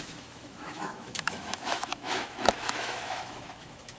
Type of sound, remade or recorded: remade